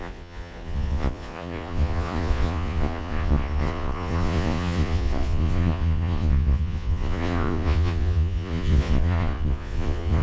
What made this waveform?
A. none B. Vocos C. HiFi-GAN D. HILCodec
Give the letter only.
B